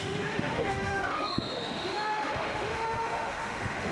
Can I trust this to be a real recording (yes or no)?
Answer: no